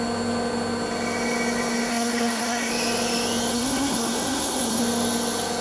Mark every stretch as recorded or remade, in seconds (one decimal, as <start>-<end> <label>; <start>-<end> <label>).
0.0-1.9 recorded; 1.9-2.7 remade; 2.7-3.5 recorded; 3.5-4.8 remade; 4.8-5.6 recorded

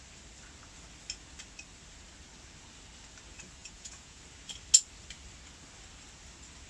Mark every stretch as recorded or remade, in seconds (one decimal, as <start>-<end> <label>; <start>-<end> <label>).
0.0-3.6 recorded; 3.6-4.2 remade; 4.2-6.7 recorded

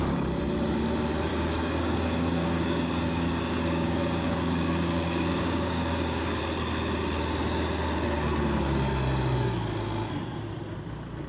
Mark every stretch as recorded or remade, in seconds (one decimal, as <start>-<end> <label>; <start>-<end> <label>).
0.0-1.3 recorded; 1.3-6.4 remade; 6.4-11.3 recorded